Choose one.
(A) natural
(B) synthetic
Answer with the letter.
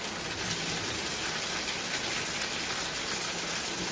A